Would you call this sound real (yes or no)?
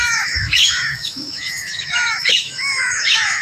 no